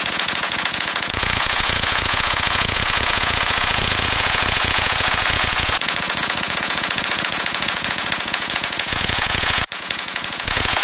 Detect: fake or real fake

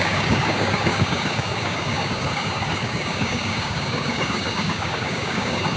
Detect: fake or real fake